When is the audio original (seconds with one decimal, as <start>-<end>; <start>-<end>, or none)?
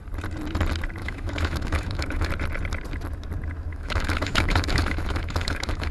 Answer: 0.0-1.0; 2.3-3.7